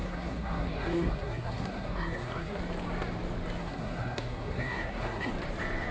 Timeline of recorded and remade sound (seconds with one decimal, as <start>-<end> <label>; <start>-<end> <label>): 0.0-2.6 remade; 2.6-3.6 recorded; 3.6-5.3 remade; 5.3-5.9 recorded